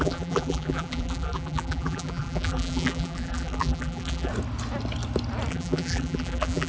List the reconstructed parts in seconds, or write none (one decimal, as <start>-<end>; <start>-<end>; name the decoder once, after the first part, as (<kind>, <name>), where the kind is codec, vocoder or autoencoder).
0.0-4.3 (vocoder, BigVGAN v2); 5.5-6.7